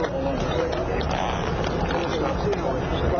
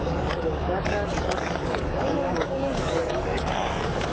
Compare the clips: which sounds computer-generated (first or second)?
second